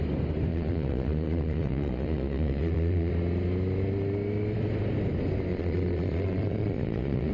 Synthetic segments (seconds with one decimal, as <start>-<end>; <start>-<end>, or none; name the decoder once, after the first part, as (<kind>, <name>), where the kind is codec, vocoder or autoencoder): 0.5-3.1 (vocoder, Vocos); 5.5-7.3